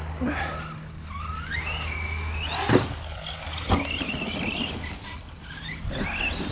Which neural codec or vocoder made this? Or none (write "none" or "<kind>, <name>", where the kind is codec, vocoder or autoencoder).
none